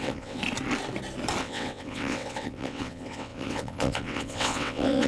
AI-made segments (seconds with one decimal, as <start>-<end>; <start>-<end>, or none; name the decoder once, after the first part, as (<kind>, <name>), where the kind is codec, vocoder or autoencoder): 0.0-0.4 (vocoder, WaveNeXt); 1.4-5.1